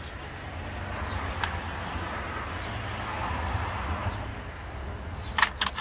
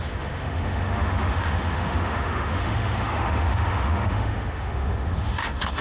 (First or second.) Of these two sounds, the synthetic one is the second